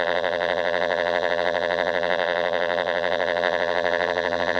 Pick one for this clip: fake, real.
fake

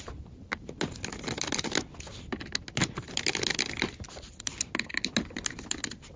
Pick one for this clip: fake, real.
real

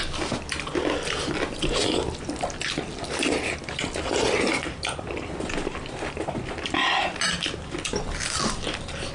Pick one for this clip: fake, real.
real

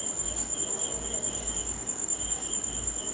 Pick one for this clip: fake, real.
fake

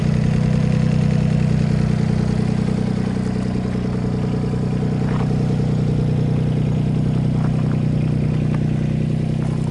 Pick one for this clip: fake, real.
real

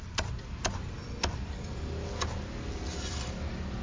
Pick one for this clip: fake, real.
real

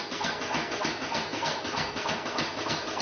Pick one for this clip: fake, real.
fake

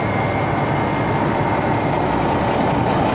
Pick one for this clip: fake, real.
real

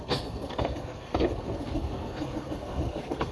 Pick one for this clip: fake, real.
fake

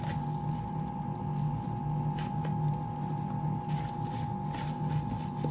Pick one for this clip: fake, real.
real